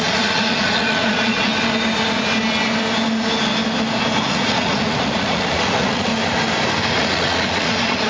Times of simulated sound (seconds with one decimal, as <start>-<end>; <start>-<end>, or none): 0.0-1.5; 4.2-6.1; 6.9-8.1